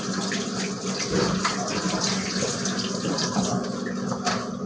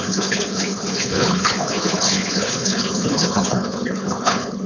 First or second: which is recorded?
first